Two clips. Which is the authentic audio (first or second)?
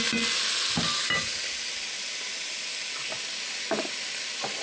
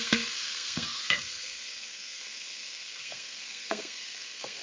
first